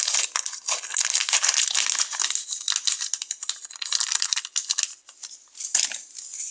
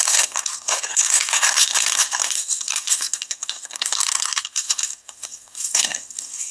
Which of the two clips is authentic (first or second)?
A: first